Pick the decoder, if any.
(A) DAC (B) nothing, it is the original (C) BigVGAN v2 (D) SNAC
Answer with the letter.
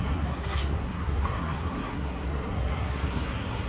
D